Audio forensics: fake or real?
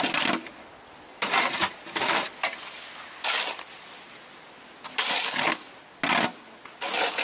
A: real